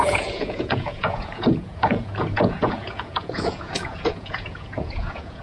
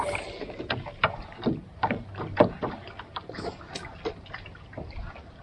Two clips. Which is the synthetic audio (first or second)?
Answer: first